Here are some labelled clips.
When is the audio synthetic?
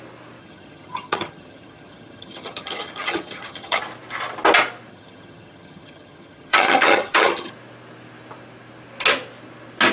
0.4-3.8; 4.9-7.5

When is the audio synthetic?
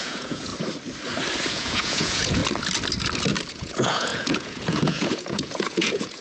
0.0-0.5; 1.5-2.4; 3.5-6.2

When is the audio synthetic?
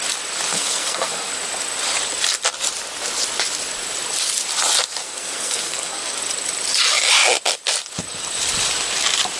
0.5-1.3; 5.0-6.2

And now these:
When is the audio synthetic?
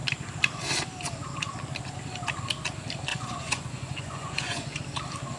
3.1-4.8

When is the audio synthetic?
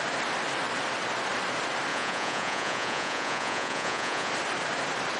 1.9-4.3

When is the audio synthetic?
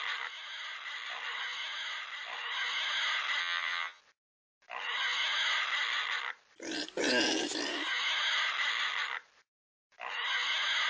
3.4-4.0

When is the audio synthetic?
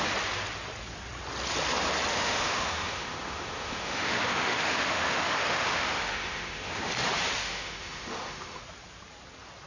2.1-6.9; 7.4-8.6